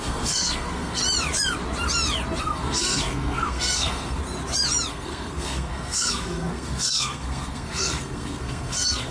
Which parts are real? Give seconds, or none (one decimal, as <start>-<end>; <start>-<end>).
1.0-2.4; 4.2-4.9